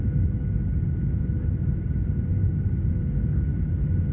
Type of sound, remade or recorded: recorded